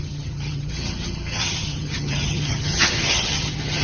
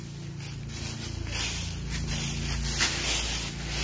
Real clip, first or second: second